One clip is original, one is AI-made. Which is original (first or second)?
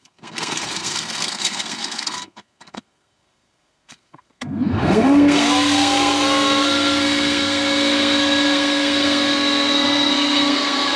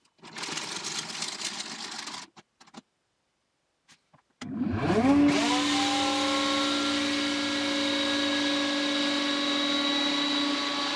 second